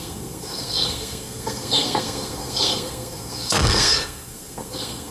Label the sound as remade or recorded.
remade